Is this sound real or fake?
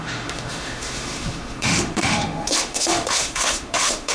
fake